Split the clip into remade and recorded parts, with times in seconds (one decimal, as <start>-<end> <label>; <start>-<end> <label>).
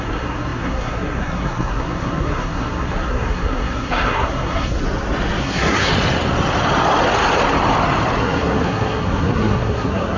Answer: 0.0-4.8 remade; 4.8-5.4 recorded; 5.4-5.9 remade; 5.9-8.2 recorded; 8.2-10.2 remade